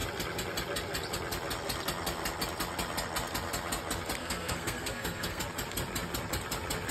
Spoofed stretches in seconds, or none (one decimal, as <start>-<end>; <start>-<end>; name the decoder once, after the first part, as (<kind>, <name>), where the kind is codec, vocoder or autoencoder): 4.2-5.4 (codec, SNAC)